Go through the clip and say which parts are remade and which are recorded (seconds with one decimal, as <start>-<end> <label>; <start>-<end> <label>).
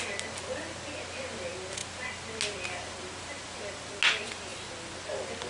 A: 0.0-5.5 recorded